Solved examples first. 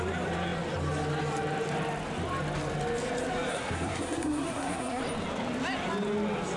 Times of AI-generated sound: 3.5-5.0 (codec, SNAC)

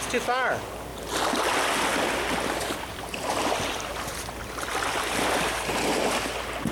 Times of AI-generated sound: none

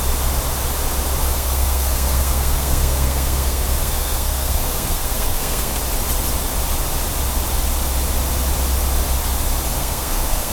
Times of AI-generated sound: 1.2-5.8 (codec, SNAC); 9.8-10.5

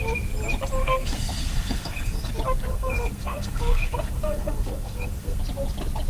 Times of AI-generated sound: 0.8-2.3 (codec, SNAC); 2.7-5.4

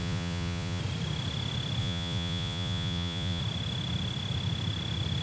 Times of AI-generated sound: 0.0-0.8 (vocoder, Vocos); 1.8-3.4